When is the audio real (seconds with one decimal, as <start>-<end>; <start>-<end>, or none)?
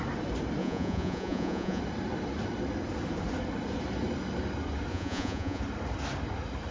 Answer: 0.0-0.6; 1.8-4.9; 5.6-6.7